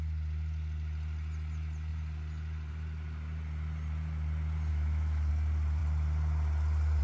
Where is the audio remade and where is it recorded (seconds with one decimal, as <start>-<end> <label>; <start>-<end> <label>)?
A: 0.0-4.7 recorded; 4.7-5.3 remade; 5.3-7.0 recorded